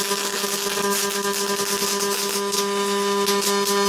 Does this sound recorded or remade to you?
recorded